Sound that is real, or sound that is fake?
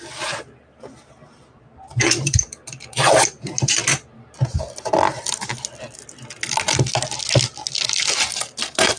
real